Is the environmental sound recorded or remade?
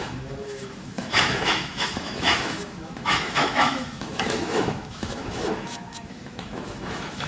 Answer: remade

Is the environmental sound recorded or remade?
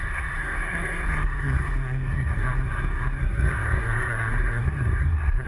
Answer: remade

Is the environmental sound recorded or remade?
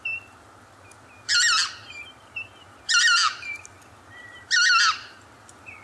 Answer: recorded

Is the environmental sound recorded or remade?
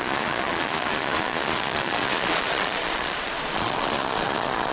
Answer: remade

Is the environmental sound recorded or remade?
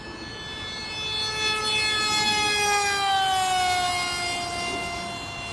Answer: recorded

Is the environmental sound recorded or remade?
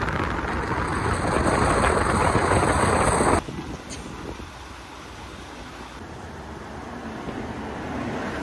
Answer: recorded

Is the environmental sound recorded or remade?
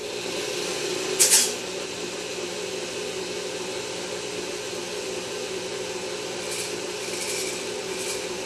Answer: recorded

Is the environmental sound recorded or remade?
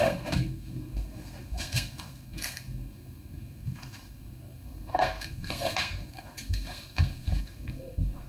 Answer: remade